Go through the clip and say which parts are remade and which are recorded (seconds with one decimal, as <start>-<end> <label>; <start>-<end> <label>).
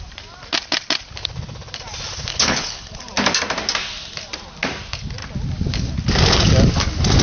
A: 0.0-2.3 recorded; 2.3-3.0 remade; 3.0-7.2 recorded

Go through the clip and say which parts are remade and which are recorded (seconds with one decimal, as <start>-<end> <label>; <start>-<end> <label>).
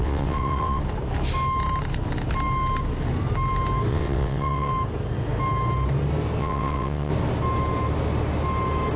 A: 0.0-0.8 remade; 0.8-3.9 recorded; 3.9-4.7 remade; 4.7-6.4 recorded; 6.4-7.1 remade; 7.1-9.0 recorded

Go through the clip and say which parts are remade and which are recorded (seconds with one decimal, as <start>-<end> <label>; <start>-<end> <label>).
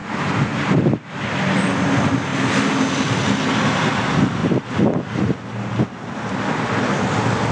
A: 0.0-7.5 recorded